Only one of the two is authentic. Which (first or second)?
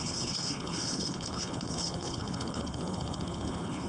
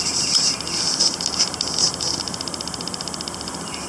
second